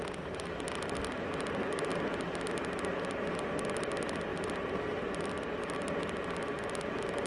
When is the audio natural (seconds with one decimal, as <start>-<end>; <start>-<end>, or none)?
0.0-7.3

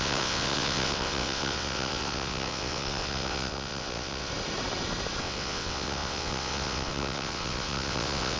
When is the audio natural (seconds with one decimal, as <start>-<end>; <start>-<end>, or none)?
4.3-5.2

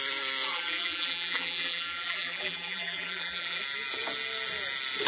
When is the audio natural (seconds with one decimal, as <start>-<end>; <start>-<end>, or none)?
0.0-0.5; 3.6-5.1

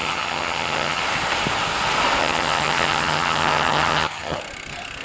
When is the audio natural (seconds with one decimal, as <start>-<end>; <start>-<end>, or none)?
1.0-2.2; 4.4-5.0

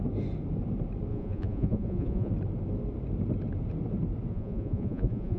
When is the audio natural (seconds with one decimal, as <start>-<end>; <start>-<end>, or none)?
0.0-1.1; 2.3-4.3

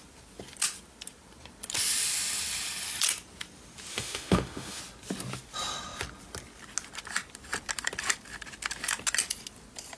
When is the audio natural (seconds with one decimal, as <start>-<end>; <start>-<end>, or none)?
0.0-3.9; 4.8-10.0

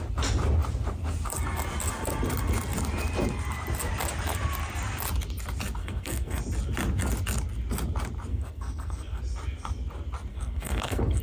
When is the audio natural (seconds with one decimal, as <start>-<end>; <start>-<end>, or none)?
0.0-5.8; 6.4-8.3; 9.2-10.3